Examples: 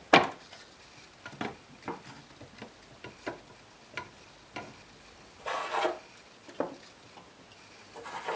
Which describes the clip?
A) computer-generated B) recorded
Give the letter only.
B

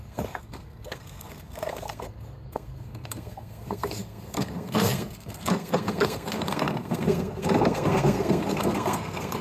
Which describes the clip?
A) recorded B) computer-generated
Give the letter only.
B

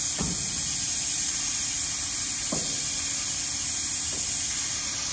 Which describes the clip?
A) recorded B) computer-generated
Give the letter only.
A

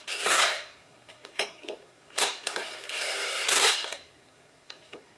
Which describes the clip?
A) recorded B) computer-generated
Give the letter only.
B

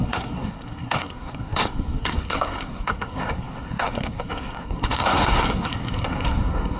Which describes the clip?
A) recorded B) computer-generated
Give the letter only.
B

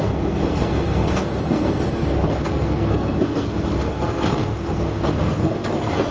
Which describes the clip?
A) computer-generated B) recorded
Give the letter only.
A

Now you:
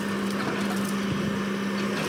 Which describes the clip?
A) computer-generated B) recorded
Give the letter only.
B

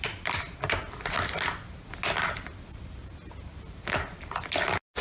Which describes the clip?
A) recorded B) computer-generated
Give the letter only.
A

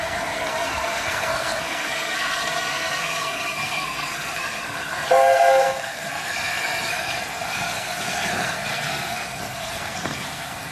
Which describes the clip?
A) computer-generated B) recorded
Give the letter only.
A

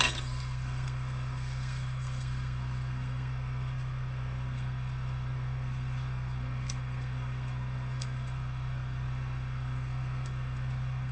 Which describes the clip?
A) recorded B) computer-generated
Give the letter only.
B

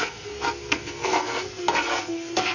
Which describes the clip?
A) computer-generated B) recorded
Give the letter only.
A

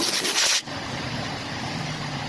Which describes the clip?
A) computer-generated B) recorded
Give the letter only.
B